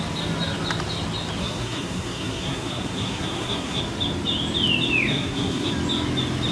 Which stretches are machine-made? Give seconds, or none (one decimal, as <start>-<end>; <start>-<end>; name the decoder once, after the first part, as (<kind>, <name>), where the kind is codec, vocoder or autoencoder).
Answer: 1.4-3.8 (codec, SNAC); 5.1-5.7